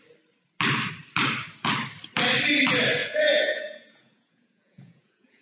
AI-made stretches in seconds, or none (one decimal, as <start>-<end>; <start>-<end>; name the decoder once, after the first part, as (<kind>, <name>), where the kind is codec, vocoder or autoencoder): 3.0-5.4 (vocoder, Vocos)